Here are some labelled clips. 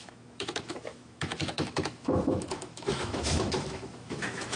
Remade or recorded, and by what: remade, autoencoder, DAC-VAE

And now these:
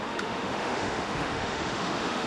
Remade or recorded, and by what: remade, autoencoder, DAC-VAE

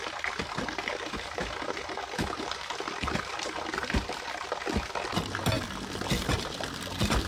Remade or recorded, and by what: recorded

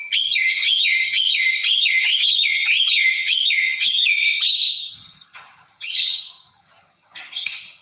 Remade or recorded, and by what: remade, vocoder, HiFi-GAN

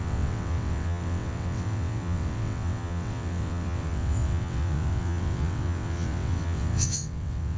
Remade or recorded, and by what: remade, vocoder, WaveNeXt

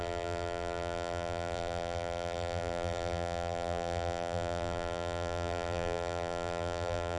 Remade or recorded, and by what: remade, vocoder, BigVGAN v2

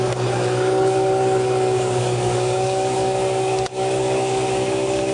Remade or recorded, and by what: remade, codec, DAC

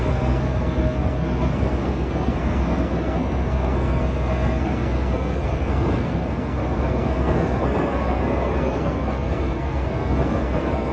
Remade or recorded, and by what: remade, codec, SNAC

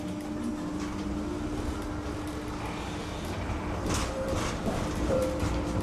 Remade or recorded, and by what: recorded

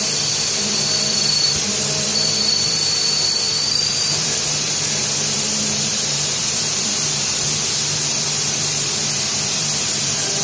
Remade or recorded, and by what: remade, vocoder, BigVGAN v2